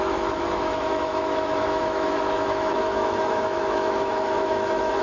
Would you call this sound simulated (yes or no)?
yes